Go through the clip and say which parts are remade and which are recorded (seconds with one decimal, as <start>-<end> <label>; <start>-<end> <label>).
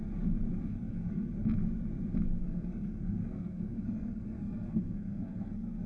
0.0-0.7 recorded; 0.7-1.3 remade; 1.3-2.4 recorded; 2.4-5.9 remade